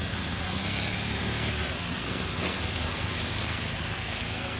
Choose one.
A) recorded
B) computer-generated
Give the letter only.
B